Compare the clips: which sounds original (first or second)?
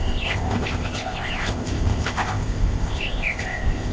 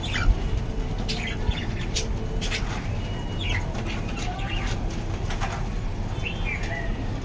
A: second